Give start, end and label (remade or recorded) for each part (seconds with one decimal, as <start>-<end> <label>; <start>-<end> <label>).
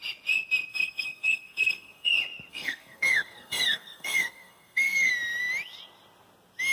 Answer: 0.0-0.7 recorded; 0.7-2.1 remade; 2.1-2.5 recorded; 2.5-5.1 remade; 5.1-6.7 recorded